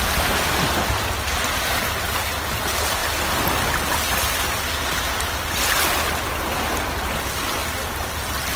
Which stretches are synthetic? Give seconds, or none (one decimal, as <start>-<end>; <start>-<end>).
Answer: none

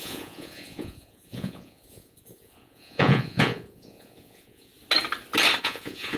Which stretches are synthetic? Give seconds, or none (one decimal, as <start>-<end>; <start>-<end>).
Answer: 0.0-4.7; 5.6-6.2

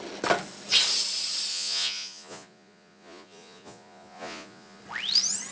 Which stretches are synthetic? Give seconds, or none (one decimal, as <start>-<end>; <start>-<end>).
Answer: 1.5-4.8